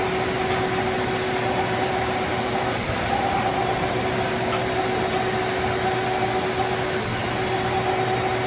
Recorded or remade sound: recorded